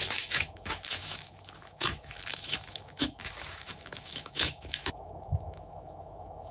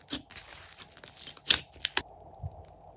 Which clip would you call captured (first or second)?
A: second